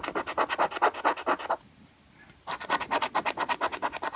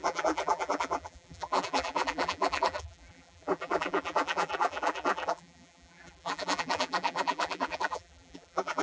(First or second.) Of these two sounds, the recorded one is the first